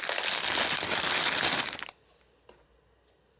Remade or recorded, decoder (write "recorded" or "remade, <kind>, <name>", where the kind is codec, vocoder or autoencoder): recorded